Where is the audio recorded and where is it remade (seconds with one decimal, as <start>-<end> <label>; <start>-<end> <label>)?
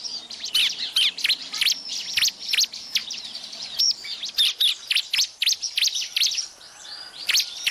0.0-7.7 remade